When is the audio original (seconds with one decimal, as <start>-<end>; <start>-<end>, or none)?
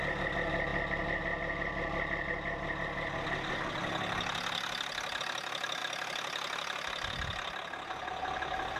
0.0-8.8